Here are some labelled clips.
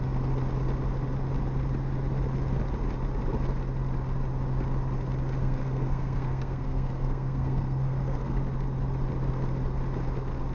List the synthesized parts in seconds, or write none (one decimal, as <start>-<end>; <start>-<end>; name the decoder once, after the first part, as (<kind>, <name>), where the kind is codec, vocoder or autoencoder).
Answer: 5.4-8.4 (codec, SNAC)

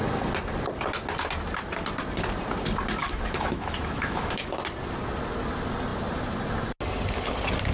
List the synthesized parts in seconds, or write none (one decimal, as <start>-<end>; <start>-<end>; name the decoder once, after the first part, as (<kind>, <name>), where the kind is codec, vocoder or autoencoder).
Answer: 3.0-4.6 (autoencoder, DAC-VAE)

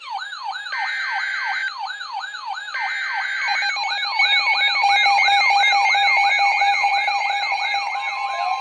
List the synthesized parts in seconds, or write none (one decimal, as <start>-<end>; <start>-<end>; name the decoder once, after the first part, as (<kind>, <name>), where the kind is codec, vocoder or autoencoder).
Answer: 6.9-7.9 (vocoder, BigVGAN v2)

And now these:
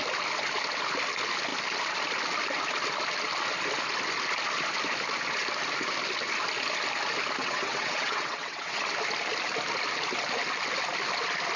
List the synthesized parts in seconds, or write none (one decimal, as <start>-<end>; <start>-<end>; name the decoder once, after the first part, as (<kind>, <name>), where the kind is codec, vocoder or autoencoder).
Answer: 7.4-8.8 (vocoder, WaveNeXt)

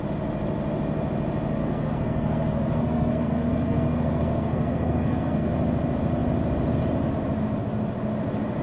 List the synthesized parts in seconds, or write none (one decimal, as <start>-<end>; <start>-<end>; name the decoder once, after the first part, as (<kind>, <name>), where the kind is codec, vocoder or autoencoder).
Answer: 1.6-5.5 (codec, SNAC)

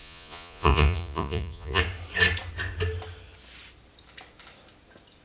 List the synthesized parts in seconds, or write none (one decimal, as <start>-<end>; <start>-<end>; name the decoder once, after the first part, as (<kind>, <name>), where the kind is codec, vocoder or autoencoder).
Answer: 0.0-1.8 (vocoder, Vocos)